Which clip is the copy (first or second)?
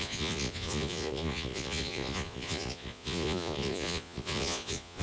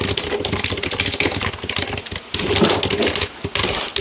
first